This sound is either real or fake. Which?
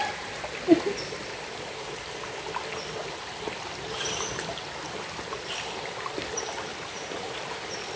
real